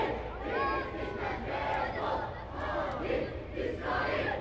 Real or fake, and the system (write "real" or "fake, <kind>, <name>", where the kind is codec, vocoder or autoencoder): real